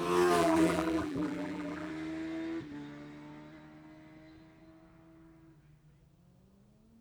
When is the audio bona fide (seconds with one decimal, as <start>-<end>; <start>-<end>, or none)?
0.0-0.4; 1.9-7.0